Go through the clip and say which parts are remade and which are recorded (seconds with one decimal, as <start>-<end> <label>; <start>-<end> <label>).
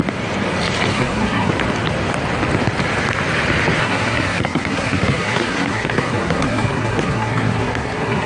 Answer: 0.0-0.9 recorded; 0.9-1.5 remade; 1.5-3.8 recorded; 3.8-8.3 remade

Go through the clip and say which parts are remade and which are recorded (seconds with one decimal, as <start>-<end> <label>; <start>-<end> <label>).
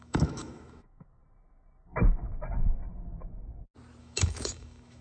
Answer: 0.0-1.2 remade; 1.2-4.0 recorded; 4.0-5.0 remade